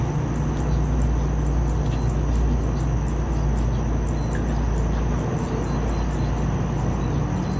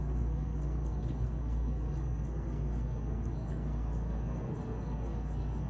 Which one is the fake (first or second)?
second